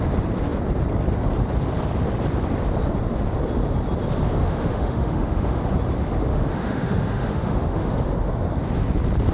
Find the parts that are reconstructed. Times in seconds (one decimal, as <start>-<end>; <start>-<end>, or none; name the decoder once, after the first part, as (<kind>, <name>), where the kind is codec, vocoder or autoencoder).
4.4-5.6 (autoencoder, DAC-VAE); 6.3-7.9